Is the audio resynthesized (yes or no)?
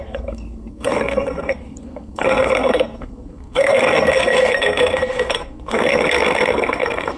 yes